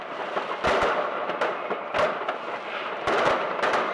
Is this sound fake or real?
real